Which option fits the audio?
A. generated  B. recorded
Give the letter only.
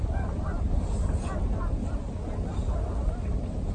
B